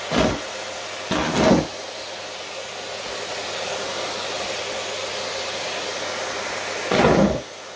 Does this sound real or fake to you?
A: real